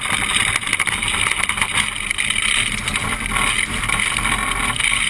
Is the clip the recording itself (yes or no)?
yes